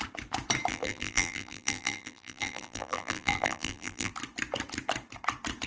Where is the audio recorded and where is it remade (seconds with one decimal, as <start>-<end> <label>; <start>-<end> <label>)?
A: 0.0-0.7 recorded; 0.7-4.1 remade; 4.1-5.7 recorded